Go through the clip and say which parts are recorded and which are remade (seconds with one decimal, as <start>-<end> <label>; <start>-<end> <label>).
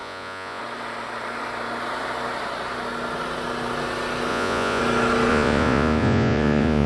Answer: 0.0-0.6 remade; 0.6-4.3 recorded; 4.3-4.8 remade; 4.8-5.3 recorded; 5.3-6.9 remade